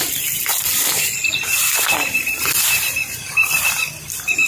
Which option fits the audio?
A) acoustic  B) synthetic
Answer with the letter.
A